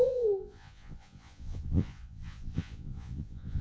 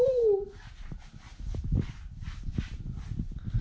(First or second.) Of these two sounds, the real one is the second